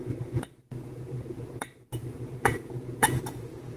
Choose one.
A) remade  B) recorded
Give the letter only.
A